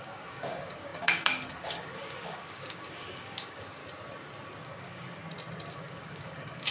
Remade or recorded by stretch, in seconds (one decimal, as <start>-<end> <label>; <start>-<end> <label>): 0.0-3.8 remade; 3.8-4.6 recorded; 4.6-5.2 remade; 5.2-5.7 recorded; 5.7-6.7 remade

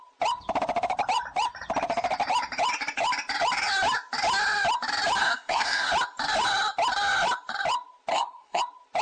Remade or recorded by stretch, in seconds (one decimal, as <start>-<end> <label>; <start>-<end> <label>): 0.0-5.2 recorded; 5.2-5.9 remade; 5.9-8.1 recorded; 8.1-8.6 remade; 8.6-9.0 recorded

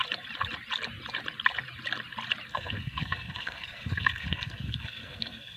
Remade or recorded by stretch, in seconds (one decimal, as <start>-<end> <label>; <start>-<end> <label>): 0.0-2.5 recorded; 2.5-5.6 remade